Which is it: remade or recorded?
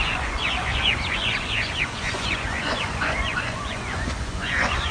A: remade